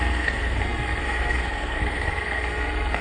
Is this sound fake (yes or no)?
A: yes